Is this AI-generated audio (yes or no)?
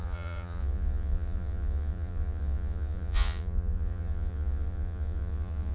yes